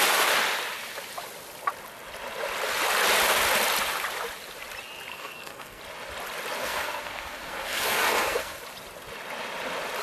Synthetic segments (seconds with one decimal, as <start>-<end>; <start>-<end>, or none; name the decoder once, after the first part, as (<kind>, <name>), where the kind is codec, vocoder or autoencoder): 5.1-5.8 (codec, SNAC); 6.6-8.6